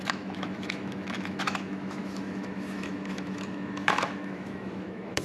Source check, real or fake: fake